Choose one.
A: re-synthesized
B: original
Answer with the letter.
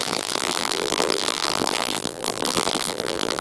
A